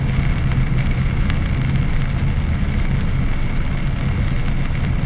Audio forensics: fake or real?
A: real